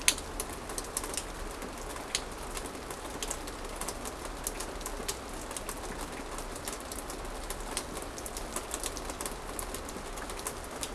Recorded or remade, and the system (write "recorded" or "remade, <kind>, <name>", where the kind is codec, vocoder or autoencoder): recorded